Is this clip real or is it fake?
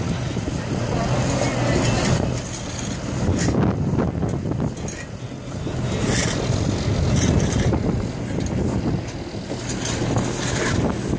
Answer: real